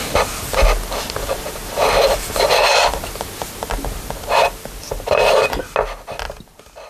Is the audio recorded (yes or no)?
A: yes